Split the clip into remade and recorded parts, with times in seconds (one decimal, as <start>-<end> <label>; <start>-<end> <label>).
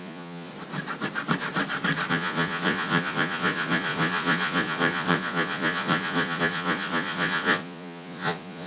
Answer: 0.0-0.5 remade; 0.5-2.1 recorded; 2.1-8.7 remade